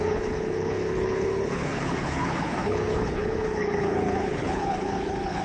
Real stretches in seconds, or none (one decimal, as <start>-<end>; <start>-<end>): none